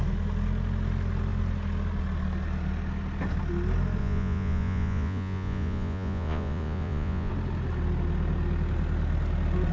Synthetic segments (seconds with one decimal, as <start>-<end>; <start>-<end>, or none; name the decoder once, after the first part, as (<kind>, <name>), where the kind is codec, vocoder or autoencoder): 4.0-7.3 (vocoder, Vocos)